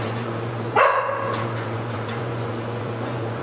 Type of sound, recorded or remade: remade